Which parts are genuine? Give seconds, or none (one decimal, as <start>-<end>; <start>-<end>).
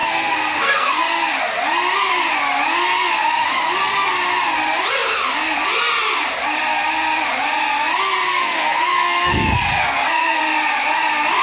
1.0-8.3; 10.4-11.4